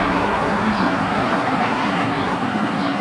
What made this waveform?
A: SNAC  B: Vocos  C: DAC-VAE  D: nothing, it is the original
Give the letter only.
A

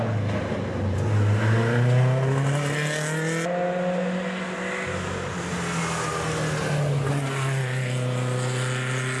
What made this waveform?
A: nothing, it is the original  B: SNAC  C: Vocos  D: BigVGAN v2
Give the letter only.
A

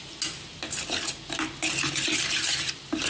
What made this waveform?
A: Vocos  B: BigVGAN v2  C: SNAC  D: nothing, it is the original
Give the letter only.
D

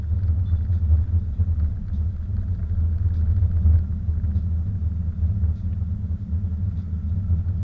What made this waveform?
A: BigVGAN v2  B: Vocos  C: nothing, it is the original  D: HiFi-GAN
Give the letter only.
C